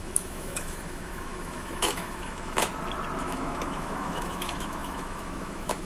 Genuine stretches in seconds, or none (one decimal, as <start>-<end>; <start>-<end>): 2.7-3.2